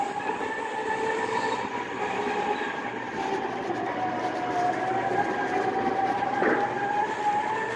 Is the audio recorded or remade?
recorded